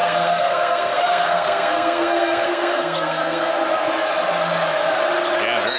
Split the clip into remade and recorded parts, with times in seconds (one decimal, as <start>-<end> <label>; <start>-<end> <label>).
0.0-3.5 remade; 3.5-5.8 recorded